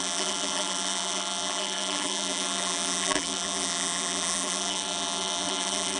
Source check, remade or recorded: remade